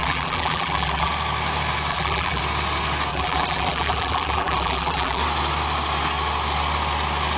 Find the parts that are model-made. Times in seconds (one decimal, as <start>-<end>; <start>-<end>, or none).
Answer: 0.0-1.1; 1.9-2.4; 3.1-5.2